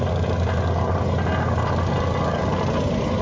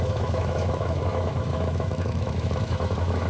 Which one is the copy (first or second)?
second